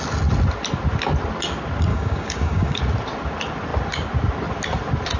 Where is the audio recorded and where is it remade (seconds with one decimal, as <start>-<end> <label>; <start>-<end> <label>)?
0.0-1.9 recorded; 1.9-2.8 remade; 2.8-5.2 recorded